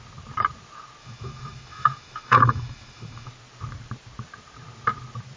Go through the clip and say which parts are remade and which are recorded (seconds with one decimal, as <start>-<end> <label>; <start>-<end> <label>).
0.0-1.0 recorded; 1.0-3.3 remade; 3.3-5.4 recorded